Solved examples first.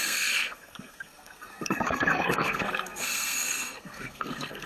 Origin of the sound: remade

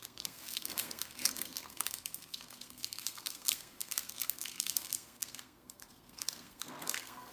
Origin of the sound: remade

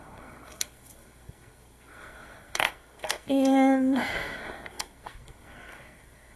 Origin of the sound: remade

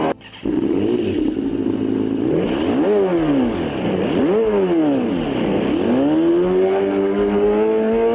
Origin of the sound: recorded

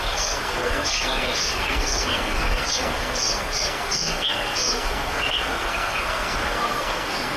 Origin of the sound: remade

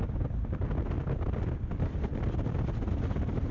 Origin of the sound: recorded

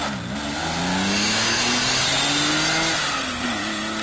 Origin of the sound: recorded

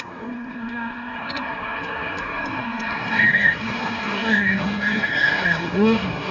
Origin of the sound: remade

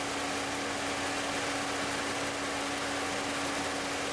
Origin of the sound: recorded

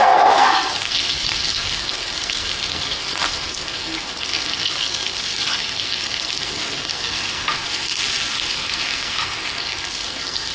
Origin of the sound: remade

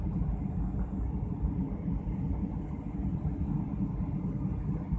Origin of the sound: recorded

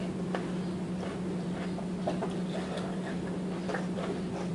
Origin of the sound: recorded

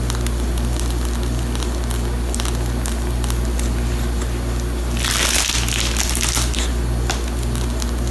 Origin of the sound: recorded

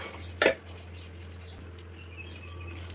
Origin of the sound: recorded